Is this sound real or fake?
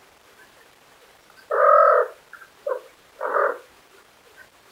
fake